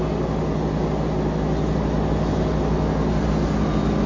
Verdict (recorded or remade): recorded